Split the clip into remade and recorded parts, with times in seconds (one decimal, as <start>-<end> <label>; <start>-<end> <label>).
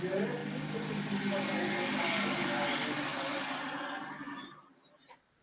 0.0-5.4 recorded